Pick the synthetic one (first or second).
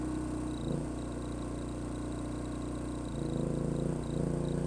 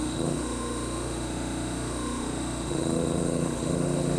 second